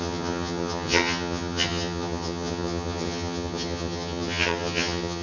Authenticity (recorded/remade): remade